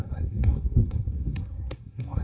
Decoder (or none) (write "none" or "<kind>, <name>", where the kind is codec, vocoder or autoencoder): codec, SNAC